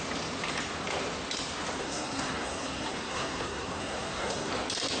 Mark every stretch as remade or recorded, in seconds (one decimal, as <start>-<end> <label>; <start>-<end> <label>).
0.0-1.8 recorded; 1.8-4.5 remade; 4.5-5.0 recorded